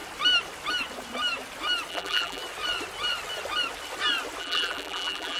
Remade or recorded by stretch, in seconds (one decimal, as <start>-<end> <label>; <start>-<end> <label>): 0.0-1.9 recorded; 1.9-2.4 remade; 2.4-4.4 recorded; 4.4-5.4 remade